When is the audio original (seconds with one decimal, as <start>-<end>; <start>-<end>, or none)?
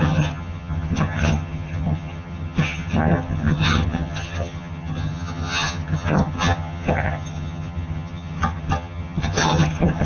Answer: none